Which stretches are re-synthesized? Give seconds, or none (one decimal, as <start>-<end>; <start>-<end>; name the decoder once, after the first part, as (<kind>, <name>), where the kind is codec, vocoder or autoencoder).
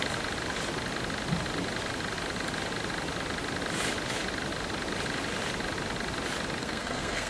6.6-7.3 (codec, SNAC)